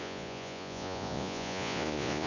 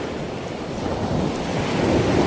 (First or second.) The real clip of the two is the second